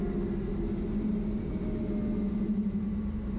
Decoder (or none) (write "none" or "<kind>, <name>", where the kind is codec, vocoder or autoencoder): none